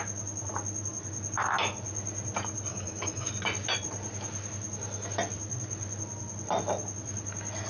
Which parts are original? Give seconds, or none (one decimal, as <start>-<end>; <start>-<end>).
0.0-2.7; 3.3-7.7